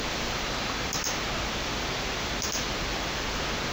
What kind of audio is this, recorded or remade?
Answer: remade